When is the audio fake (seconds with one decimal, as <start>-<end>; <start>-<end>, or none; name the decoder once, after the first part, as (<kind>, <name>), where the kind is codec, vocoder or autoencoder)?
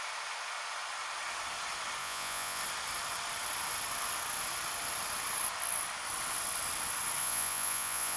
2.0-2.6 (vocoder, Vocos); 7.2-8.2